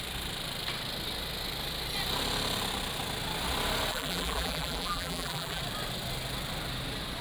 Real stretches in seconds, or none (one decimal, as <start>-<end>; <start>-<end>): 0.0-3.9; 5.6-7.2